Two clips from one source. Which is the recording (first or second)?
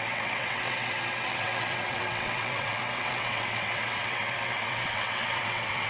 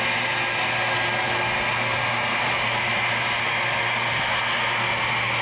second